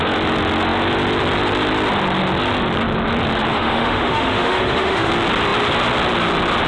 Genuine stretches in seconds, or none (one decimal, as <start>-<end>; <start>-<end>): 0.0-3.5; 5.1-6.7